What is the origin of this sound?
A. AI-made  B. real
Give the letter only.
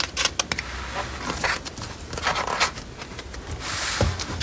B